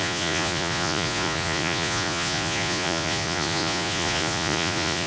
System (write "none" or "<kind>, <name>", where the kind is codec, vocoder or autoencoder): vocoder, Vocos